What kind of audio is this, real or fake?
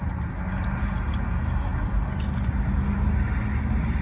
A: real